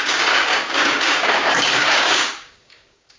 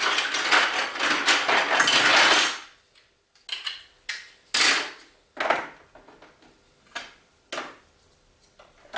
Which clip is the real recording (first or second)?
second